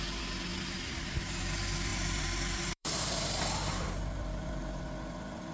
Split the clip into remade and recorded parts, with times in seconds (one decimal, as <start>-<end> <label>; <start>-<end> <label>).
0.0-0.5 recorded; 0.5-1.4 remade; 1.4-1.9 recorded; 1.9-4.8 remade; 4.8-5.5 recorded